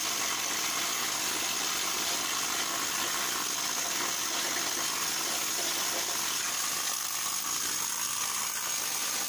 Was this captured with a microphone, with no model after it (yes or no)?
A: yes